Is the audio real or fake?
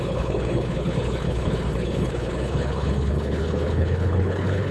fake